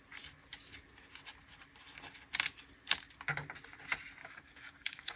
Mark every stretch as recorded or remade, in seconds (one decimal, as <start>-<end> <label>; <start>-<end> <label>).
0.0-4.2 recorded; 4.2-5.2 remade